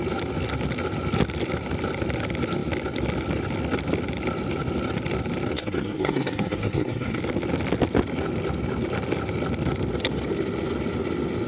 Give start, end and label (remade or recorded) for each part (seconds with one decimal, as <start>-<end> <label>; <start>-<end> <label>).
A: 0.0-5.5 recorded; 5.5-7.2 remade; 7.2-11.5 recorded